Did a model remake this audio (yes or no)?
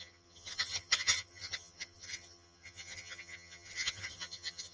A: yes